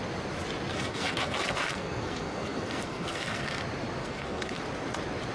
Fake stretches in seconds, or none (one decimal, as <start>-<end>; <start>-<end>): 0.7-3.6; 4.0-4.6